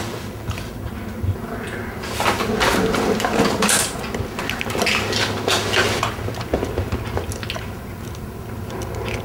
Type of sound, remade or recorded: recorded